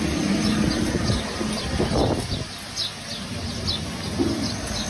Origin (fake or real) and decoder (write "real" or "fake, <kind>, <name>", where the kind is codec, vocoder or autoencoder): real